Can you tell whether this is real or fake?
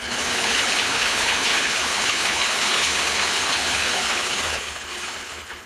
fake